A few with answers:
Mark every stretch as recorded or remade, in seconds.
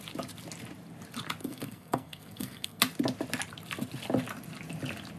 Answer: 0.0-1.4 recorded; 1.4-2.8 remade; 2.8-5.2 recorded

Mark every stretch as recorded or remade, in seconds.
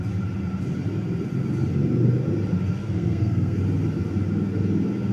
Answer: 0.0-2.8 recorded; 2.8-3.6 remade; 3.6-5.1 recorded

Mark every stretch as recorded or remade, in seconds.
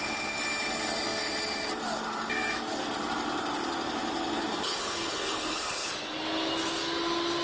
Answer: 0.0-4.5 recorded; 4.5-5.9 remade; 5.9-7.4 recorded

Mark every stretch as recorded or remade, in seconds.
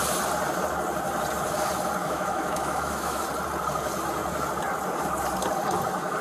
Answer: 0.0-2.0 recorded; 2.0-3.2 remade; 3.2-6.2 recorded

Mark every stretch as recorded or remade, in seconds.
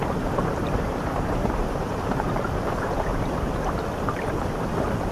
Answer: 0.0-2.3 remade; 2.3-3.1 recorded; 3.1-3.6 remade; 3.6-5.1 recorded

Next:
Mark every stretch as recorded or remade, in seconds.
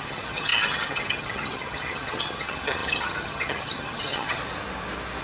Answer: 0.0-4.4 remade; 4.4-5.2 recorded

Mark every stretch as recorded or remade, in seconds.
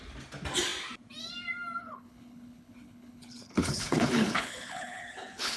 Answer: 0.0-1.8 recorded; 1.8-5.6 remade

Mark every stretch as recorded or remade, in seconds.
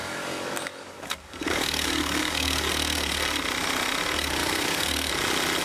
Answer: 0.0-2.7 remade; 2.7-4.4 recorded; 4.4-5.1 remade; 5.1-5.6 recorded